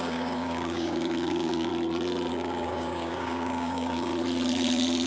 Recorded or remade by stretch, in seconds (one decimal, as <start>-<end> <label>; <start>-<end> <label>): 0.0-1.7 remade; 1.7-2.3 recorded; 2.3-4.1 remade; 4.1-5.1 recorded